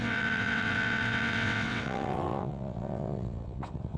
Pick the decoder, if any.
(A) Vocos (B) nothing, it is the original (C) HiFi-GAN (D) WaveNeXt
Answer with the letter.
D